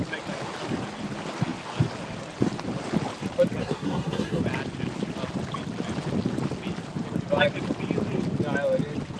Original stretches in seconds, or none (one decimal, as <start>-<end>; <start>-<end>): 0.0-3.6; 4.4-9.2